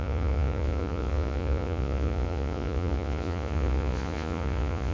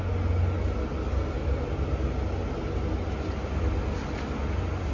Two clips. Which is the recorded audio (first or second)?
second